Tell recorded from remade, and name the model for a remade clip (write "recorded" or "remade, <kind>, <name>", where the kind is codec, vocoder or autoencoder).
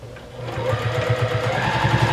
recorded